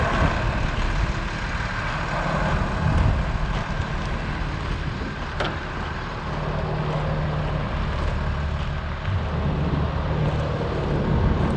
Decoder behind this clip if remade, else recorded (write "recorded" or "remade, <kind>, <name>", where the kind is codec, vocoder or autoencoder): recorded